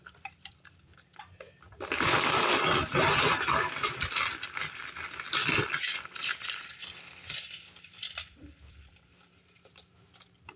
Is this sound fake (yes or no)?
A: yes